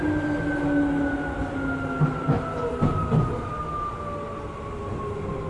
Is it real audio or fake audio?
real